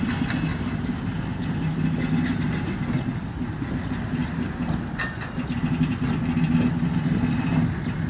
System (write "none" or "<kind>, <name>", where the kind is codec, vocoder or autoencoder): none